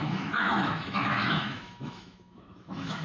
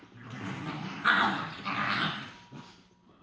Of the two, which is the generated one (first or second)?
first